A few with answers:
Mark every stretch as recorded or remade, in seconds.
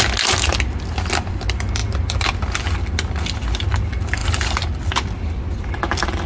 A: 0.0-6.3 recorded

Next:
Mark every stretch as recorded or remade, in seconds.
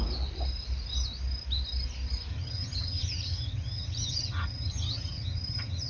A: 0.0-2.3 recorded; 2.3-5.9 remade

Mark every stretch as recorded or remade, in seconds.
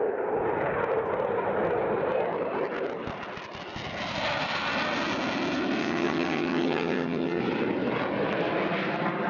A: 0.0-5.8 recorded; 5.8-7.4 remade; 7.4-9.3 recorded